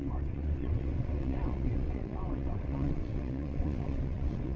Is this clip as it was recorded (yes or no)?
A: no